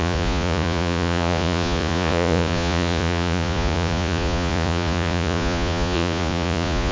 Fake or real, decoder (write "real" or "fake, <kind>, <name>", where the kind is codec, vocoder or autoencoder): fake, vocoder, Vocos